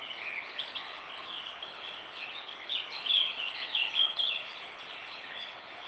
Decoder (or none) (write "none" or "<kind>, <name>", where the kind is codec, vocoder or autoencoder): codec, HILCodec